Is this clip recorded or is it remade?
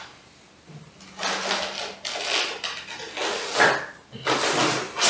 recorded